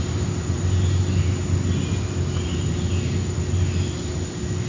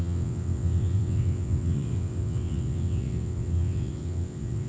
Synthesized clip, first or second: second